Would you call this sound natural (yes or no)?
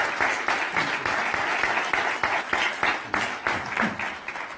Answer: yes